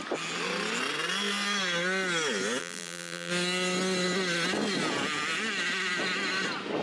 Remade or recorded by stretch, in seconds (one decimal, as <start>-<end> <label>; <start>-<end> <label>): 0.0-2.6 recorded; 2.6-3.3 remade; 3.3-6.8 recorded